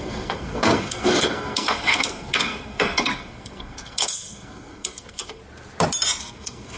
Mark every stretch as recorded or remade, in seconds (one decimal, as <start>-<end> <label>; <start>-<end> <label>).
0.0-5.4 remade; 5.4-6.2 recorded; 6.2-6.8 remade